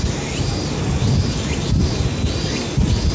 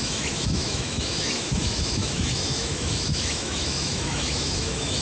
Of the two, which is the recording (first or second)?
first